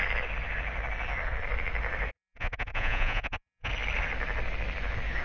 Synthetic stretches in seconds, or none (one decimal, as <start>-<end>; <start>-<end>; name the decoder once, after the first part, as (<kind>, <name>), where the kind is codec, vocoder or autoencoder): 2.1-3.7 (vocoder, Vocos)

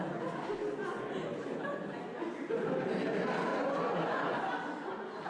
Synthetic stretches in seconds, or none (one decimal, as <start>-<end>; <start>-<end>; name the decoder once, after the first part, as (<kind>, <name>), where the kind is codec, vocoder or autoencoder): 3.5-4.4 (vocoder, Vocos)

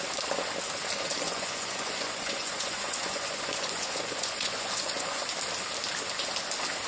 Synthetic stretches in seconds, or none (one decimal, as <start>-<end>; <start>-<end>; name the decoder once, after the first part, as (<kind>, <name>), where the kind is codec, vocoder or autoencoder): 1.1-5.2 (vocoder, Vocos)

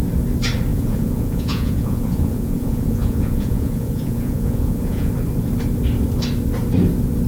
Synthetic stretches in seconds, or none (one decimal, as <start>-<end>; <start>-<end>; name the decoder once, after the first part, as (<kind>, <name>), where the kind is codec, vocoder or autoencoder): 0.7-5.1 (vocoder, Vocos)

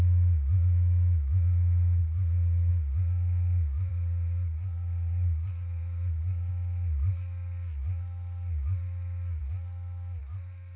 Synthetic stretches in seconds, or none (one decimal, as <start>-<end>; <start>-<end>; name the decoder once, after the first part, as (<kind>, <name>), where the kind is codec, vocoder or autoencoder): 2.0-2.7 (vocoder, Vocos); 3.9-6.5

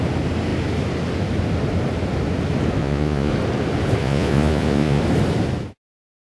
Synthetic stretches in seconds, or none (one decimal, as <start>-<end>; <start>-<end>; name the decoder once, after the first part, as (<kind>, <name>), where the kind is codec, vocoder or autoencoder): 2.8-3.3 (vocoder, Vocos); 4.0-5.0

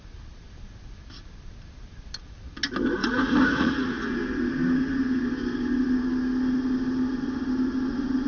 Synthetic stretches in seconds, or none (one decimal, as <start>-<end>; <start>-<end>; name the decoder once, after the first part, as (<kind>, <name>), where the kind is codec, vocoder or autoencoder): 3.0-4.1 (vocoder, Vocos)

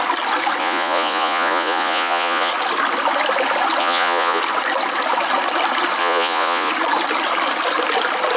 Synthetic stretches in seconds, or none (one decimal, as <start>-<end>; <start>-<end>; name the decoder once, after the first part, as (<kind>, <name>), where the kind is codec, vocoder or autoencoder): 0.6-2.5 (vocoder, Vocos); 3.8-4.4; 6.0-6.7